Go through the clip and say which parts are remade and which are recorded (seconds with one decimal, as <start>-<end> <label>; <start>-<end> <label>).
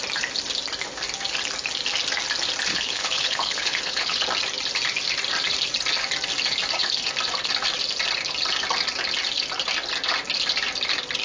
0.0-2.7 recorded; 2.7-4.2 remade; 4.2-11.2 recorded